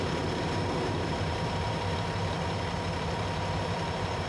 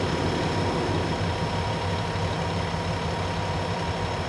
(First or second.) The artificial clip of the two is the first